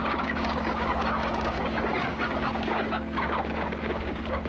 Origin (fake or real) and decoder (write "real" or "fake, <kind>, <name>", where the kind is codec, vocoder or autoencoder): fake, codec, DAC